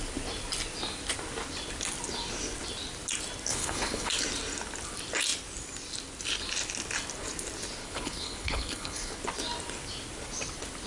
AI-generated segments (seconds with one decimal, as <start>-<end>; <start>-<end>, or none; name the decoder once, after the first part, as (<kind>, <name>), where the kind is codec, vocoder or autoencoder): 3.5-4.1 (codec, HILCodec); 7.8-9.2